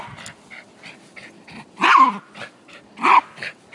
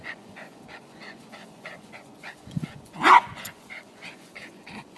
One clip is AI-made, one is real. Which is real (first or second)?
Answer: first